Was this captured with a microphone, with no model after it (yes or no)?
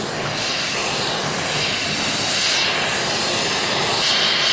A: yes